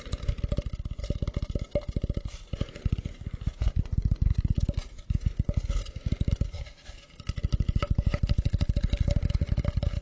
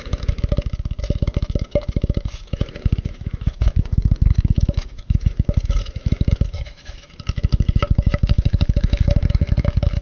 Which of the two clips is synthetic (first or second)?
second